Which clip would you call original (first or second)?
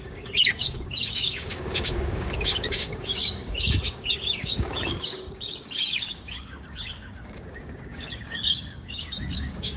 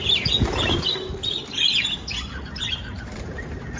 second